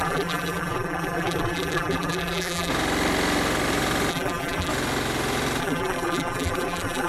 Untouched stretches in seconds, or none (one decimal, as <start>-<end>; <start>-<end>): 2.7-4.1; 4.7-5.6